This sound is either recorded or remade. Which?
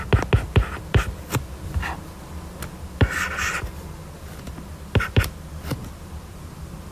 recorded